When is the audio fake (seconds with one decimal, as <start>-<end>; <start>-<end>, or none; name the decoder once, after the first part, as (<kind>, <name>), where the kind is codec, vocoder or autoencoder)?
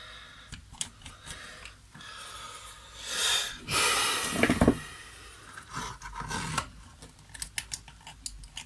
none